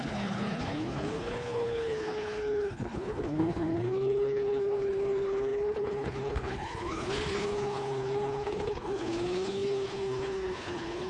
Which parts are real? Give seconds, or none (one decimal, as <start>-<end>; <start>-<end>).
none